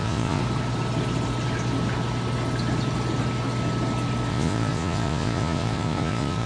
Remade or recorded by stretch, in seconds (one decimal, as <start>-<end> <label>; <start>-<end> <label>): 0.0-0.4 remade; 0.4-4.3 recorded; 4.3-6.5 remade